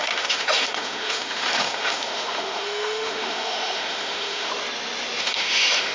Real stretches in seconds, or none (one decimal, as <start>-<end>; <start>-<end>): 4.5-5.2